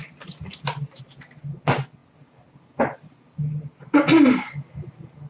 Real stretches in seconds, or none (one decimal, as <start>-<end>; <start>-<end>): 0.0-5.3